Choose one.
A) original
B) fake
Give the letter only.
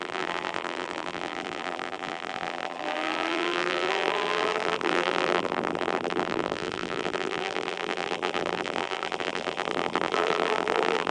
B